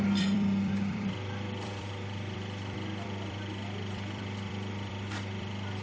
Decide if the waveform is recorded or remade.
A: remade